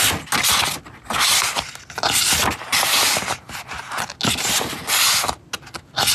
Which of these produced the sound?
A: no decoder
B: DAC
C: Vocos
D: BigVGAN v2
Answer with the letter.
A